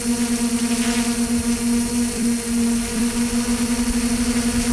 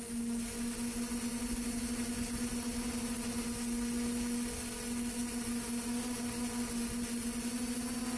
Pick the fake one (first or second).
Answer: first